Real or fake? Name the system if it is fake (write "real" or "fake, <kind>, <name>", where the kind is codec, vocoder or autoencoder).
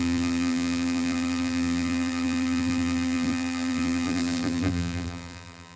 fake, vocoder, BigVGAN v2